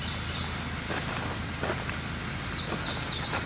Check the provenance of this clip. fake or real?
real